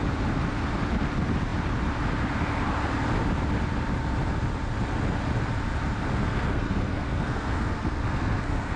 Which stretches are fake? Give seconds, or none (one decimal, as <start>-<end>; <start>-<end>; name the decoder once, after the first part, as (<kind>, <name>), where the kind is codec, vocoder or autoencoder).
6.1-8.8 (codec, SNAC)